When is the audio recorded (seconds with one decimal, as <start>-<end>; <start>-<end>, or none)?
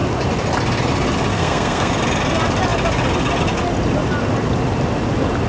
0.0-1.3; 1.9-5.5